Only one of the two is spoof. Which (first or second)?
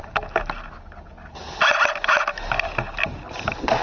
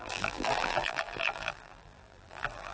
second